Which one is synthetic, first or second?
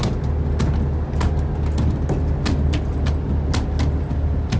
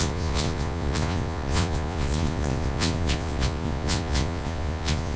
second